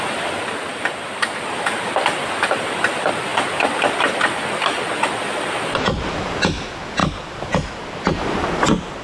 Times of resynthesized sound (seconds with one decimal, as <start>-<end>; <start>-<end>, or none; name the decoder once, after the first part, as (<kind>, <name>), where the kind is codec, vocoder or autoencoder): 0.0-9.0 (vocoder, BigVGAN v2)